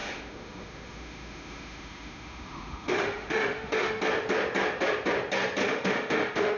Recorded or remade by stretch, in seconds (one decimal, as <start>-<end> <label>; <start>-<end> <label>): 0.0-4.0 remade; 4.0-5.6 recorded; 5.6-6.6 remade